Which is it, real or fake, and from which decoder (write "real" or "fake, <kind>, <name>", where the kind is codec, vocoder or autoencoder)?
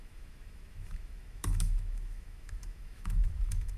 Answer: fake, autoencoder, DAC-VAE